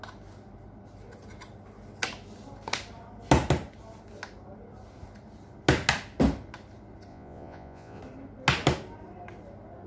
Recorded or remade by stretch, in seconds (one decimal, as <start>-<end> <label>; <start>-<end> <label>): 0.0-7.1 recorded; 7.1-8.0 remade; 8.0-9.9 recorded